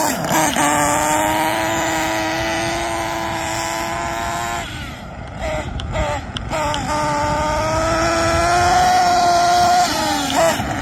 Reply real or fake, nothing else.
real